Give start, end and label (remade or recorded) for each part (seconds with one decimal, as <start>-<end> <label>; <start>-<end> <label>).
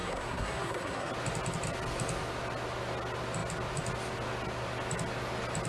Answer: 0.0-1.1 remade; 1.1-5.7 recorded